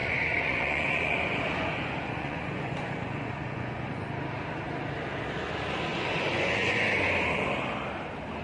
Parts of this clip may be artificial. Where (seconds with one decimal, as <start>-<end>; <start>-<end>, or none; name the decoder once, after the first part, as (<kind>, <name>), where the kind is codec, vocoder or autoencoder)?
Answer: 0.0-4.2 (vocoder, Vocos); 5.9-6.9

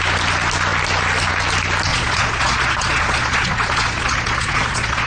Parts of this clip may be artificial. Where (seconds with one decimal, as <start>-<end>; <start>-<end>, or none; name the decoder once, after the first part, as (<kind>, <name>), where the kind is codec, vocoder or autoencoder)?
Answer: 1.9-5.1 (vocoder, Vocos)

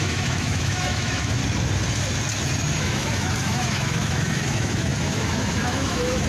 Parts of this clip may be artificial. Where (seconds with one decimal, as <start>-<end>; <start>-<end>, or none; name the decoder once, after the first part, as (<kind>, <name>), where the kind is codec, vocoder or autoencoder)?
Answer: 0.0-1.4 (autoencoder, DAC-VAE); 2.8-6.3